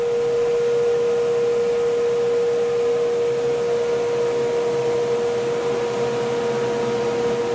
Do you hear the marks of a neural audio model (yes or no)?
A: no